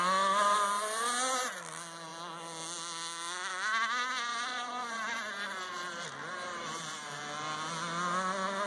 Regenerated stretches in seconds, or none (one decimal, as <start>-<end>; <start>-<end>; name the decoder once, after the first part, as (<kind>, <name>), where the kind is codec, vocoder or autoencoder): 4.3-7.2 (vocoder, BigVGAN v2)